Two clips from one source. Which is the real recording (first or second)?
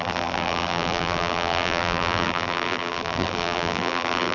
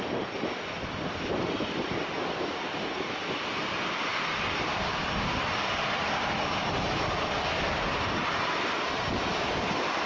second